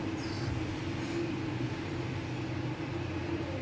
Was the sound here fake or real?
real